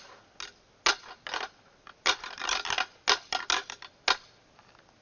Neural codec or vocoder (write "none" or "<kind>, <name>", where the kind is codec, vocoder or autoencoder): none